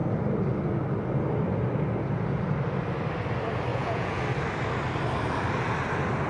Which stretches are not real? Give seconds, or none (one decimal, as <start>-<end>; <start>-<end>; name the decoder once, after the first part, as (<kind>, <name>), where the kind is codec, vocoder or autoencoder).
3.7-4.2 (vocoder, Vocos)